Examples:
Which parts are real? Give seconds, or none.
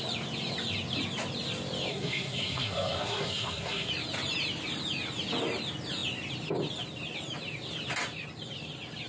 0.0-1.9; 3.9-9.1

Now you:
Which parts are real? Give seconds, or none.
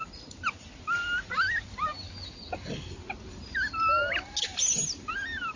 0.0-5.6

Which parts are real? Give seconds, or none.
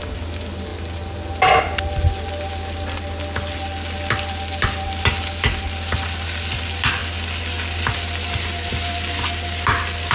0.0-10.1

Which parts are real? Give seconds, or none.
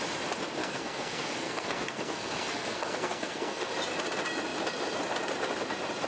0.0-0.6; 3.7-6.1